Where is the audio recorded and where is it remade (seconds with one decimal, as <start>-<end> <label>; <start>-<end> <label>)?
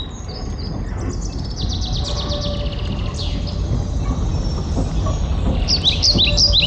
0.0-6.7 recorded